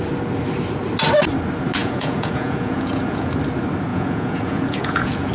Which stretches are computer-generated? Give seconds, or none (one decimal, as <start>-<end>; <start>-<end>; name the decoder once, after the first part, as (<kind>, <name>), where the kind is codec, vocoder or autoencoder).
1.8-3.3 (vocoder, Vocos); 3.9-5.3